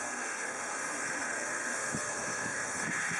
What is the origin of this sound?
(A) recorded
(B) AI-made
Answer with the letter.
B